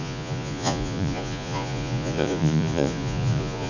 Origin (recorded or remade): remade